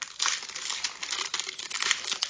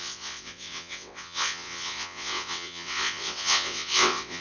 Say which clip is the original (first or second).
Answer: first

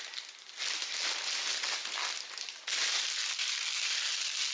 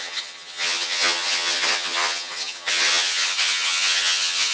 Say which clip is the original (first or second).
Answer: first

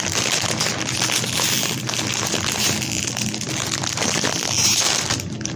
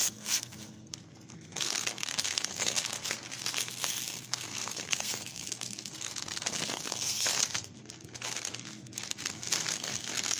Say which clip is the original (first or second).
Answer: first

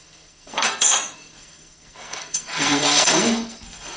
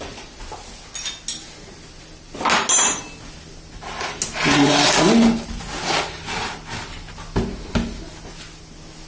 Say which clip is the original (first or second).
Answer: second